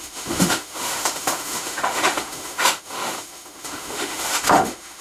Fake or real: fake